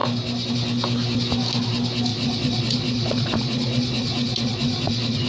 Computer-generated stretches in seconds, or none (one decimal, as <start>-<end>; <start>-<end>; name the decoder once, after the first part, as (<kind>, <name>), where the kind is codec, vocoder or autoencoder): 2.1-5.3 (vocoder, Vocos)